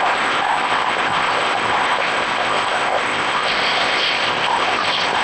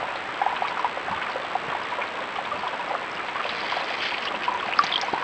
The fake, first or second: first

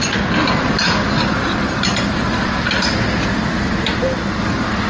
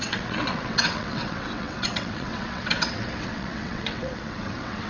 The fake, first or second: second